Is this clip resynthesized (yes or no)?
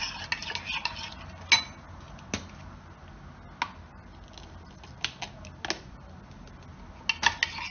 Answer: no